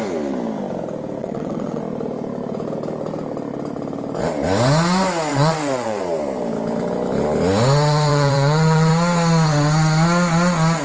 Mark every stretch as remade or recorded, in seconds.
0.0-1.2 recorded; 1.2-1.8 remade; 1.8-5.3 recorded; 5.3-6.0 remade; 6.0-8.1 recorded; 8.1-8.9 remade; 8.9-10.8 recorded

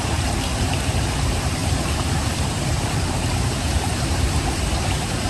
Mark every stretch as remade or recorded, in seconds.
0.0-5.3 remade

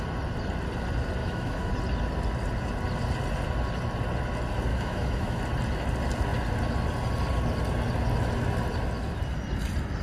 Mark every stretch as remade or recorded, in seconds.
0.0-1.2 recorded; 1.2-1.7 remade; 1.7-4.7 recorded; 4.7-5.4 remade; 5.4-10.0 recorded